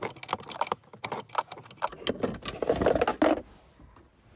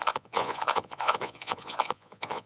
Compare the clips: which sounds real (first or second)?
first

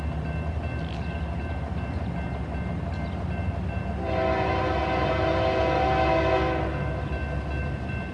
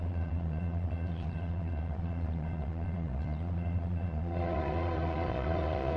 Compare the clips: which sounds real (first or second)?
first